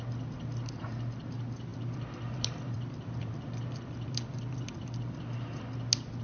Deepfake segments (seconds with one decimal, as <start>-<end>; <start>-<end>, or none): 1.7-5.2